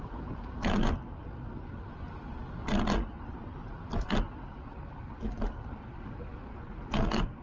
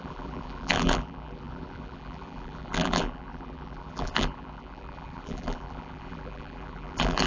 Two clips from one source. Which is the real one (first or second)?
first